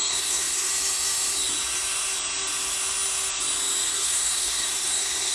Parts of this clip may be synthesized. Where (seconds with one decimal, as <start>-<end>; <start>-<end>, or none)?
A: 0.0-0.7; 3.9-5.3